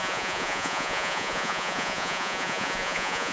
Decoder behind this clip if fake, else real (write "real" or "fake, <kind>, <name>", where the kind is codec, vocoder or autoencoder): fake, vocoder, Vocos